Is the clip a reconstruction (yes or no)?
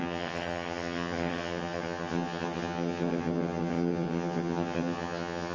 yes